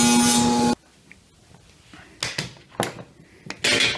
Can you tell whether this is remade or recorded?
recorded